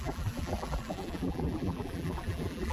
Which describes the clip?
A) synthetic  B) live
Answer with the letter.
A